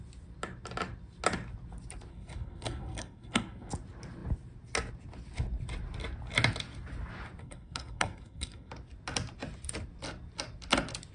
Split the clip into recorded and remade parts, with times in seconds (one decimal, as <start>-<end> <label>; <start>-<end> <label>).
0.0-2.1 recorded; 2.1-3.7 remade; 3.7-7.4 recorded; 7.4-8.7 remade; 8.7-11.1 recorded